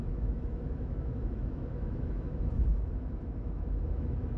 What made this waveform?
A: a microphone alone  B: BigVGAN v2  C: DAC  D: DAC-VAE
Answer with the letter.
D